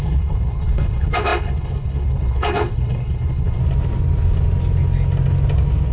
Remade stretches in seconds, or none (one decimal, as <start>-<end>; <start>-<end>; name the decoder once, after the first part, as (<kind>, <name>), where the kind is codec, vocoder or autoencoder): 0.0-3.6 (codec, HILCodec)